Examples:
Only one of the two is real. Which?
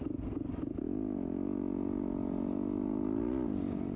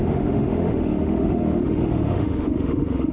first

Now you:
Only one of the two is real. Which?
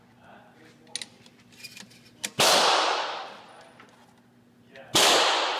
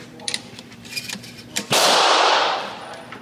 first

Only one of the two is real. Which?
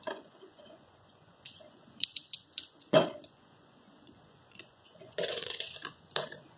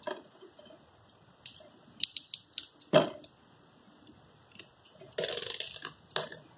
second